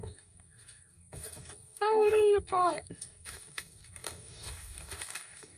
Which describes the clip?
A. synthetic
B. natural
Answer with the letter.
A